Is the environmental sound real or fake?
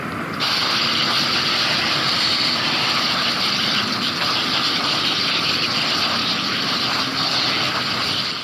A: real